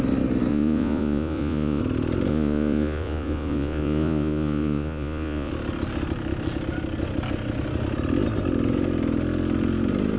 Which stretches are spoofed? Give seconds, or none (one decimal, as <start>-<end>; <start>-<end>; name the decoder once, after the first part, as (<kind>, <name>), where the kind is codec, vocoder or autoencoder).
0.5-1.8 (vocoder, Vocos); 2.3-5.5